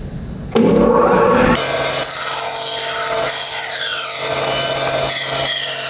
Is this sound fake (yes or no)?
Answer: no